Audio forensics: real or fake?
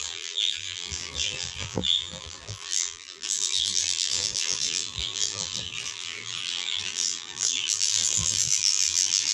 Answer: fake